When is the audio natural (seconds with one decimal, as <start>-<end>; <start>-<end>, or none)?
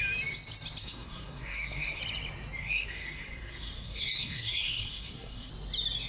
0.0-0.8; 2.0-2.6; 5.5-6.1